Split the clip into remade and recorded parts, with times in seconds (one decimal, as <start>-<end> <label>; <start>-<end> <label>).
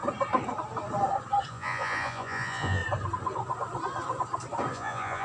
0.0-1.5 recorded; 1.5-2.8 remade; 2.8-4.7 recorded; 4.7-5.2 remade